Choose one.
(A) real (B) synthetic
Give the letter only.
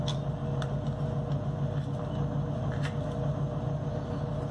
A